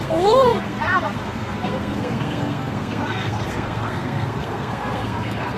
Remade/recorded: remade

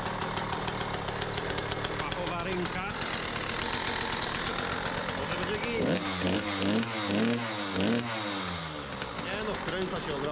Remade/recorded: recorded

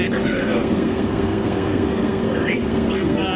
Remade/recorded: remade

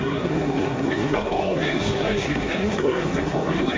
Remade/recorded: remade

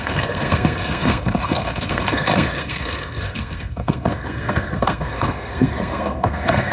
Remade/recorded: remade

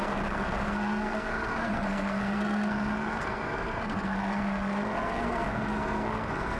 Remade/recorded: remade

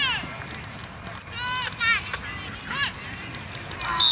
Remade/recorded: recorded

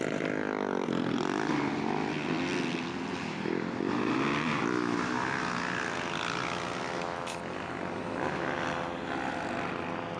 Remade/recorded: recorded